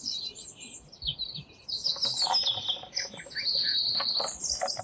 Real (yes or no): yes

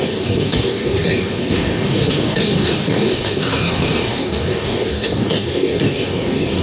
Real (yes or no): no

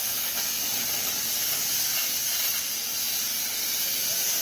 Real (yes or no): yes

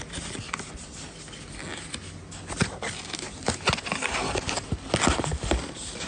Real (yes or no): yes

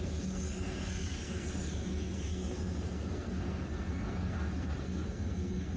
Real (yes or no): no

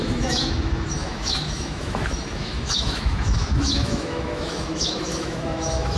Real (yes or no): no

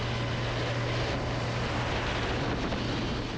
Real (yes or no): yes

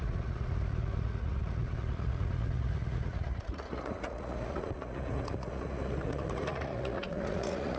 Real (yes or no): no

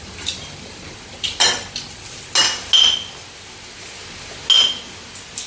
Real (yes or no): yes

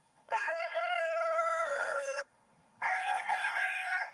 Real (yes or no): no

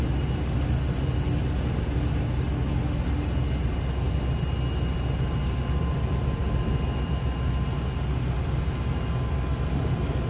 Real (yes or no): yes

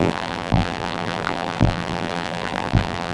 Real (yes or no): no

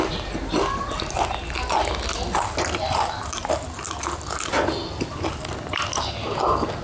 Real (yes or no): yes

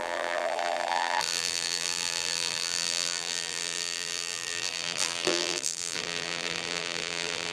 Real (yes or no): no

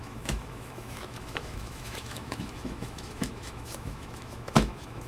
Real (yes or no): no